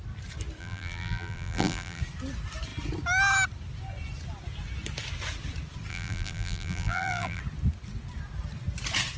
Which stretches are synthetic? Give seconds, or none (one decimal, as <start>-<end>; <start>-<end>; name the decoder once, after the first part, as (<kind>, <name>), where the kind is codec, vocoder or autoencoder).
0.6-2.0 (vocoder, BigVGAN v2); 5.9-7.4